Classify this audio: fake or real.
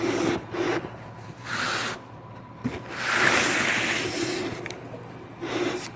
real